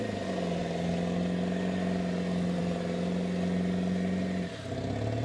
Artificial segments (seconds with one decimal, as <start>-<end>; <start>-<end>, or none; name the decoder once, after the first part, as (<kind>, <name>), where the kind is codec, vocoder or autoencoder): none

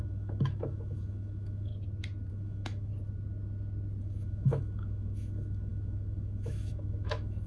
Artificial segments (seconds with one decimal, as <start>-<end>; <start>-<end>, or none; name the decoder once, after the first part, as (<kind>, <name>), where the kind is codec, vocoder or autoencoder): 0.0-1.7 (autoencoder, DAC-VAE); 2.3-2.9; 4.0-7.5